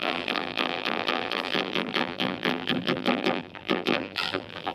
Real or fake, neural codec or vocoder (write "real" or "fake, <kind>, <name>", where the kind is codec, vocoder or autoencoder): fake, vocoder, BigVGAN v2